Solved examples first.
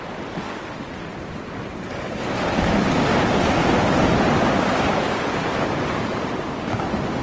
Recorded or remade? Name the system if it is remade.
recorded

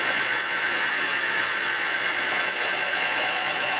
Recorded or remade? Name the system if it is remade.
remade, vocoder, Vocos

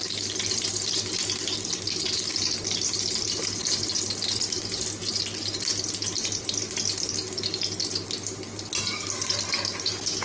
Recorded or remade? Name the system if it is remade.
recorded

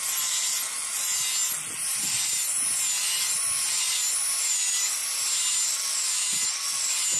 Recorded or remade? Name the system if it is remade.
recorded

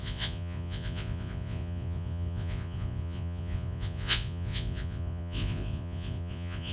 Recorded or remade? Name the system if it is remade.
remade, vocoder, Vocos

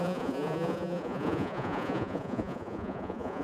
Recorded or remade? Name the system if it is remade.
remade, vocoder, Vocos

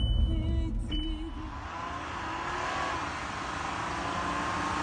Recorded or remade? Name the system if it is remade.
recorded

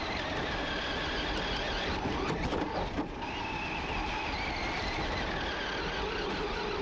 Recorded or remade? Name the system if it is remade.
recorded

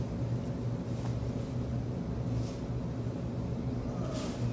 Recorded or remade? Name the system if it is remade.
recorded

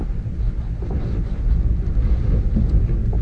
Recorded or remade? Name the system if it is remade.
recorded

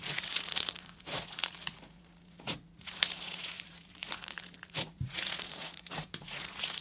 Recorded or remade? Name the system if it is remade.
remade, vocoder, Vocos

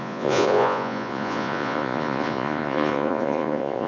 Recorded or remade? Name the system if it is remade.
remade, vocoder, Vocos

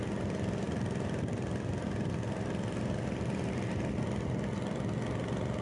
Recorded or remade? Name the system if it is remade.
recorded